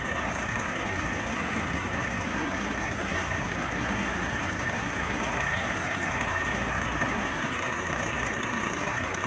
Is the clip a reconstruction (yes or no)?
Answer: yes